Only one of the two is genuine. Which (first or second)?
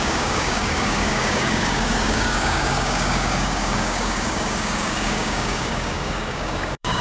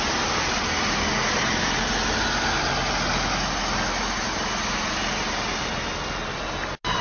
second